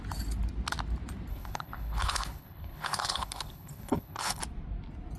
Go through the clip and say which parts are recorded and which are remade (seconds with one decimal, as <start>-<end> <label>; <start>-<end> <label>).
0.0-1.3 recorded; 1.3-4.4 remade; 4.4-5.2 recorded